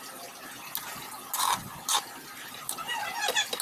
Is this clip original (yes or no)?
yes